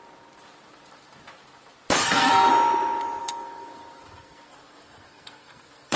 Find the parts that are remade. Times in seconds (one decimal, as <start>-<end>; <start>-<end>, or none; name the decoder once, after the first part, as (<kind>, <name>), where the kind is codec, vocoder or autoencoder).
2.0-2.5 (codec, SNAC); 3.2-6.0

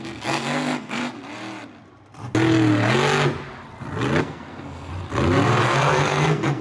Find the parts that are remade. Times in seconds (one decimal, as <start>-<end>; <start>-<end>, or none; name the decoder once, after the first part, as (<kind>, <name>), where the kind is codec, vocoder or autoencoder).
0.0-1.0 (codec, SNAC); 4.2-4.9; 5.6-6.6

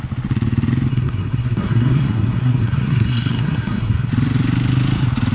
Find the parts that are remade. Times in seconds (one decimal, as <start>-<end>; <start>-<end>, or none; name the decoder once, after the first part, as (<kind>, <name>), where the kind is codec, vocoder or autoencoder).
0.9-4.1 (codec, SNAC)

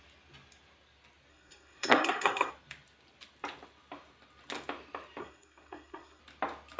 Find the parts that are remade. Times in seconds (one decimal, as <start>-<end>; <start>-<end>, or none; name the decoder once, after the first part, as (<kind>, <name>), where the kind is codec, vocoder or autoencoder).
1.3-2.5 (codec, SNAC); 5.2-6.2

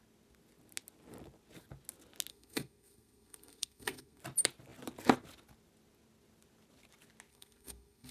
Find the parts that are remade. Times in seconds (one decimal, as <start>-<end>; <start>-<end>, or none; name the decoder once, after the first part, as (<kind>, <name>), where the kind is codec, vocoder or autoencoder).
2.3-4.2 (codec, SNAC); 7.3-8.1

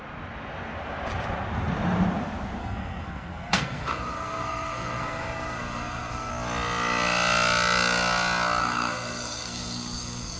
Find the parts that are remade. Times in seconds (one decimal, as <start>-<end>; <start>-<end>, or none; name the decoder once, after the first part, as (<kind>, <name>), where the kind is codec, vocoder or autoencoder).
2.6-6.3 (codec, SNAC); 8.6-10.4